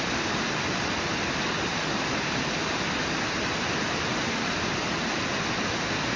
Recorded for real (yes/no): yes